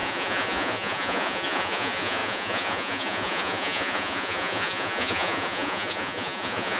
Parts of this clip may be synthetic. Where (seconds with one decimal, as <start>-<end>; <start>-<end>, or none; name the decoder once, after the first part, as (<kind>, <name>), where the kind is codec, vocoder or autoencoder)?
0.0-6.8 (vocoder, Vocos)

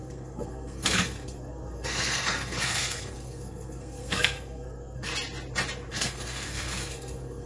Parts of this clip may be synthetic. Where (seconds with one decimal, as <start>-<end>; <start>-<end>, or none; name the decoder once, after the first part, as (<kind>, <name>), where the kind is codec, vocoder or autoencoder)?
0.0-5.1 (codec, SNAC); 5.9-7.5

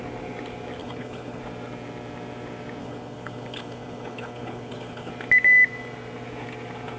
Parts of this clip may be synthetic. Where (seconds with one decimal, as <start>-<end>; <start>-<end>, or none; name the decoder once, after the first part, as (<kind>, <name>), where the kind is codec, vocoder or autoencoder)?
0.8-1.4 (codec, HILCodec); 2.8-5.1

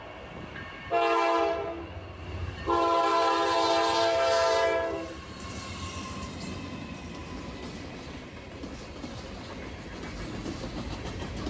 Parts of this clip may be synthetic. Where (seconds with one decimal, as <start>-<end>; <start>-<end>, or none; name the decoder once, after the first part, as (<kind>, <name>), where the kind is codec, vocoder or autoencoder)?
2.4-5.6 (vocoder, BigVGAN v2)

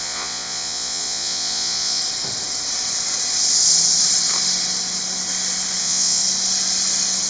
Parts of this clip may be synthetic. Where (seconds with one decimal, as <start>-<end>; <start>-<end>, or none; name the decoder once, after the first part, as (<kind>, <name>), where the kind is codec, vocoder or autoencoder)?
0.0-2.0 (vocoder, Vocos); 5.8-6.2

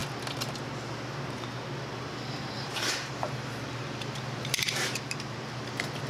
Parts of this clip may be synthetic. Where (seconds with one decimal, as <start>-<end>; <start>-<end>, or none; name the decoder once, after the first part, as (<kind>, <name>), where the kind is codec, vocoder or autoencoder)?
2.6-6.1 (vocoder, BigVGAN v2)